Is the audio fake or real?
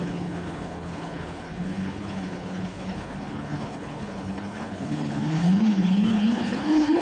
fake